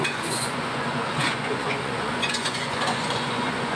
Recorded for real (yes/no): no